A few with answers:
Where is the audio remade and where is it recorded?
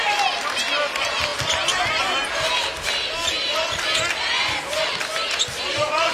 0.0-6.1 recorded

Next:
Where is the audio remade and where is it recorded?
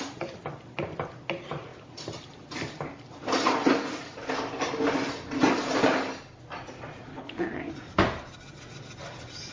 0.0-7.1 recorded; 7.1-7.7 remade; 7.7-9.5 recorded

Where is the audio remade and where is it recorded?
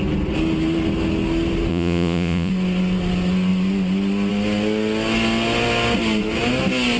0.0-1.7 recorded; 1.7-2.5 remade; 2.5-7.0 recorded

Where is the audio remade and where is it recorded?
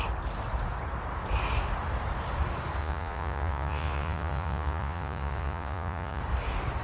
0.0-2.8 recorded; 2.8-6.2 remade; 6.2-6.8 recorded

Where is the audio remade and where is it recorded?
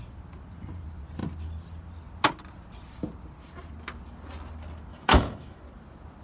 0.0-4.9 recorded; 4.9-5.6 remade; 5.6-6.2 recorded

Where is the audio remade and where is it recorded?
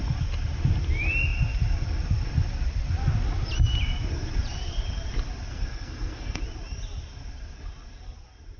0.0-5.5 recorded; 5.5-6.4 remade; 6.4-8.6 recorded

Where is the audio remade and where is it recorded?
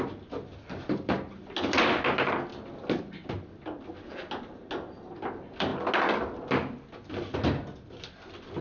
0.0-8.6 recorded